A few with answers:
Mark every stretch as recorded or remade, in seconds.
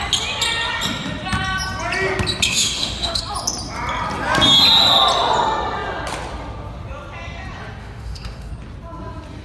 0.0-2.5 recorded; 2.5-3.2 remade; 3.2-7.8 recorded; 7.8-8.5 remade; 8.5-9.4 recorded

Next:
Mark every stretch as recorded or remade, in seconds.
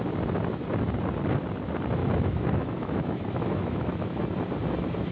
0.0-2.0 recorded; 2.0-4.2 remade; 4.2-5.1 recorded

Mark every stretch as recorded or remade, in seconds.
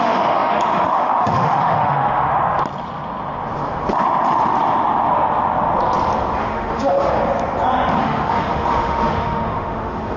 0.0-2.3 remade; 2.3-6.4 recorded; 6.4-7.2 remade; 7.2-8.0 recorded; 8.0-10.2 remade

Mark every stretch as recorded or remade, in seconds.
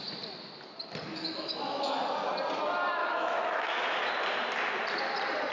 0.0-1.1 recorded; 1.1-2.0 remade; 2.0-3.0 recorded; 3.0-4.1 remade; 4.1-5.5 recorded